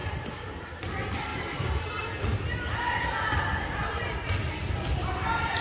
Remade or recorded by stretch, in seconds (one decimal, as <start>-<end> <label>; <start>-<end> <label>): 0.0-0.8 remade; 0.8-1.3 recorded; 1.3-1.9 remade; 1.9-5.6 recorded